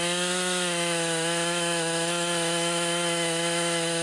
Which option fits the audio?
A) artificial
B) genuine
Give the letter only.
A